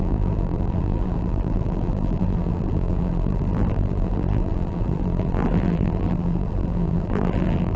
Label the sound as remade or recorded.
remade